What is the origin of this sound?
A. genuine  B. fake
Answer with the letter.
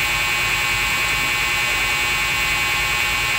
A